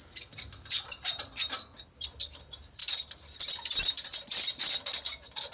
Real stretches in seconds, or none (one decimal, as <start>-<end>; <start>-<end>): 0.5-2.8; 4.6-5.5